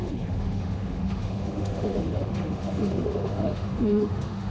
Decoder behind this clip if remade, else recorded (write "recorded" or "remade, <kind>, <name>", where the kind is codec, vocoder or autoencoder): remade, autoencoder, DAC-VAE